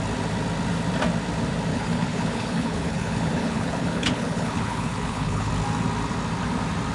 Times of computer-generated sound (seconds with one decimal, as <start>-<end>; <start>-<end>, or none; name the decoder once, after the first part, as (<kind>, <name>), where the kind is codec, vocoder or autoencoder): 1.7-5.5 (codec, HILCodec)